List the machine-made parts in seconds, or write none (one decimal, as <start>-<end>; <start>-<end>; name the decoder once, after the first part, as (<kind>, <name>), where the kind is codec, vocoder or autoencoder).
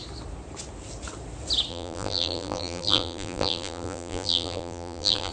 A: 1.7-5.3 (vocoder, BigVGAN v2)